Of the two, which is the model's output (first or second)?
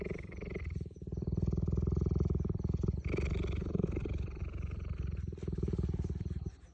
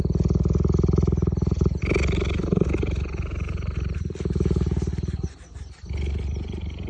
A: first